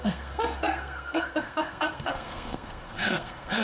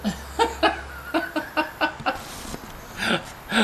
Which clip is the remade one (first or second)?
first